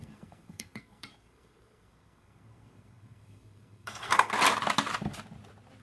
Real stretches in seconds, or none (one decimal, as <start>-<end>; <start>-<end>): 4.3-5.8